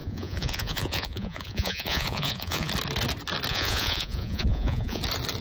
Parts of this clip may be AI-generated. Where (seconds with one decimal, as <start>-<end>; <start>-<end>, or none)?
0.0-2.7; 3.5-5.0